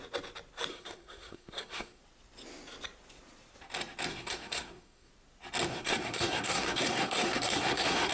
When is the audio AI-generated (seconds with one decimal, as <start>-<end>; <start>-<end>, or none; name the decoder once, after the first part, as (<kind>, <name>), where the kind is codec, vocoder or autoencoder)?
0.7-2.0 (codec, SNAC); 4.1-5.1; 5.7-8.1